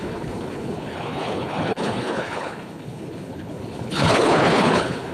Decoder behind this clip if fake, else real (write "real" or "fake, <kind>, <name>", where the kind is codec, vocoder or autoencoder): fake, codec, HILCodec